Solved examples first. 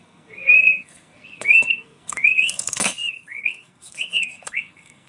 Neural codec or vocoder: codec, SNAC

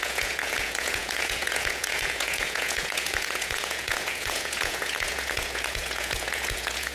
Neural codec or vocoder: vocoder, Vocos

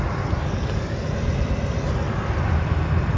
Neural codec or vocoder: none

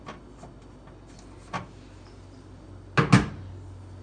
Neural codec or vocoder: none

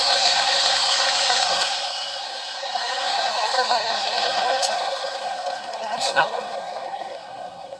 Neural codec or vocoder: codec, SNAC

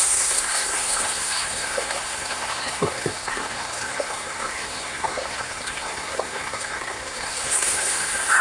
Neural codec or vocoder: codec, SNAC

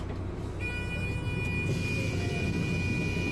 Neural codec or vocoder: none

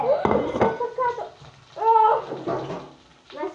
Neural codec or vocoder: none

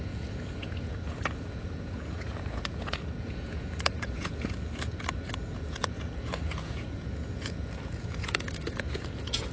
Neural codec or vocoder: vocoder, Vocos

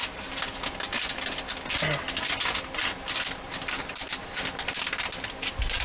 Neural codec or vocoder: none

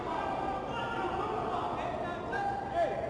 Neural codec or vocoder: none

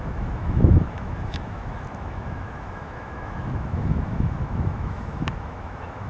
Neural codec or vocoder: autoencoder, DAC-VAE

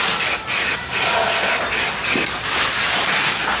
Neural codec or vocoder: none